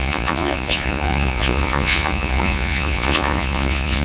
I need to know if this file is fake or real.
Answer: fake